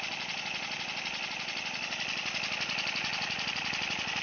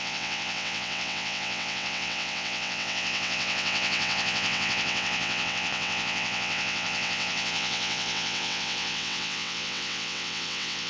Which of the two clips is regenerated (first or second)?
second